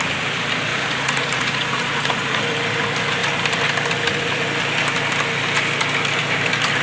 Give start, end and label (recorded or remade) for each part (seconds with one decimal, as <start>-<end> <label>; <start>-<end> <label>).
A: 0.0-0.7 recorded; 0.7-2.4 remade; 2.4-6.8 recorded